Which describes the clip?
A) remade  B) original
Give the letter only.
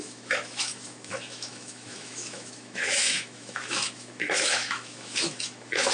A